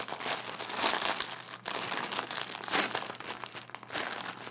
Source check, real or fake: real